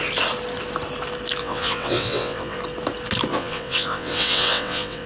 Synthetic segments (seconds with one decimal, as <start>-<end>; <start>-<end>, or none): 1.4-2.6; 3.3-5.1